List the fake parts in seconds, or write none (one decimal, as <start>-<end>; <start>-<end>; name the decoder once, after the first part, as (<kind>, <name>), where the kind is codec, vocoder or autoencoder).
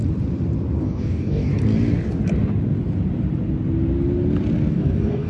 0.8-1.5 (codec, DAC); 4.7-5.3